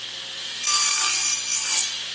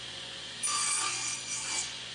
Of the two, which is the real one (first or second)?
first